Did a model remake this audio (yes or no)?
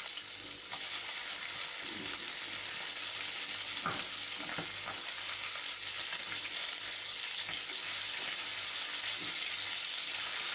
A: no